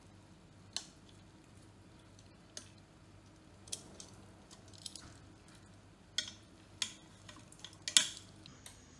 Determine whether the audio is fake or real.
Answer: real